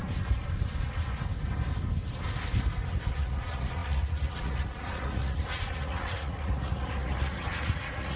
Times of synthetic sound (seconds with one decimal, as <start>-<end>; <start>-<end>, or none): 3.1-8.2